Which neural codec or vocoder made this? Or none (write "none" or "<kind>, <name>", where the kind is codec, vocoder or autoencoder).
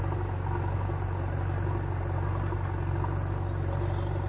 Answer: none